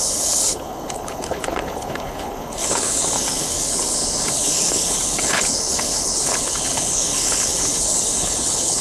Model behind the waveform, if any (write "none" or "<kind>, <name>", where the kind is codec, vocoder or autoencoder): codec, HILCodec